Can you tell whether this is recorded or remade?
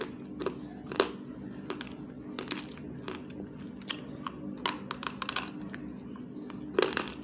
recorded